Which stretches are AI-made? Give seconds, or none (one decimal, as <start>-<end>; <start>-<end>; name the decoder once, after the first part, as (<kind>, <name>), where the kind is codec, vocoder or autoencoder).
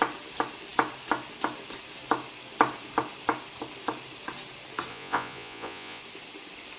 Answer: 4.9-6.0 (vocoder, Vocos)